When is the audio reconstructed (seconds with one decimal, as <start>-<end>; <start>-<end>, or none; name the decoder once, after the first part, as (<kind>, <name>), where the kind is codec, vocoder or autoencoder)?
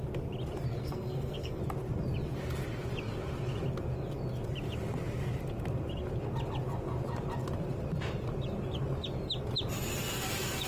0.7-1.6 (codec, SNAC)